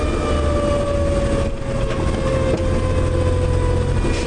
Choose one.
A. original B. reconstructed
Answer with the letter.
A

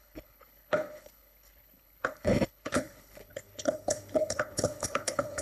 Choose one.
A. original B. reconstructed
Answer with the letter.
B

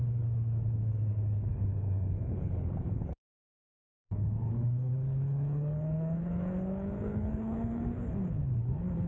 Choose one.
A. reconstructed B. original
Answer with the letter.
A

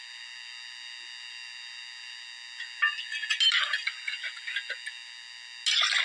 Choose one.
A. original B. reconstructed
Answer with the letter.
A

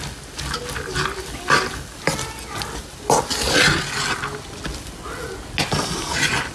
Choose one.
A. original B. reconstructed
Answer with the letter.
A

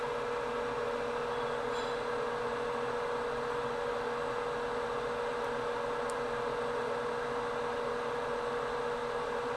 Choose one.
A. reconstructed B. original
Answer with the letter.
B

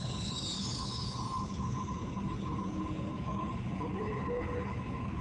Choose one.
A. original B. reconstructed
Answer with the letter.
B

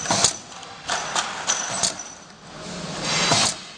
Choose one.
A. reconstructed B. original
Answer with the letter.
B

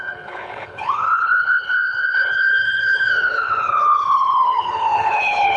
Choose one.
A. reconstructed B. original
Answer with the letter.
A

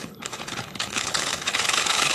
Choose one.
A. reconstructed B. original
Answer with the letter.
A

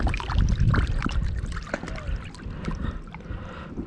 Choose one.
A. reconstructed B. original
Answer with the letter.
B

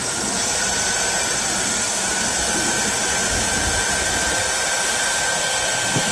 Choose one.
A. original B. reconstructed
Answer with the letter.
A